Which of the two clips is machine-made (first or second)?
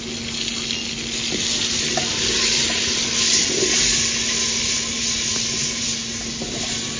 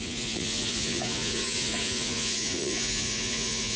second